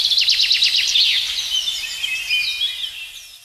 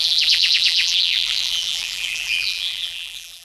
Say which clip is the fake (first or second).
second